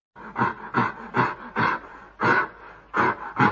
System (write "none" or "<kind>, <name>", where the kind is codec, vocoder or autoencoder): none